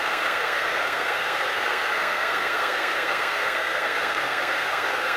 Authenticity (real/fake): fake